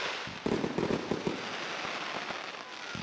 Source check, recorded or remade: recorded